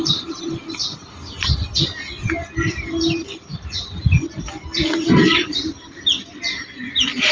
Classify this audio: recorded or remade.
recorded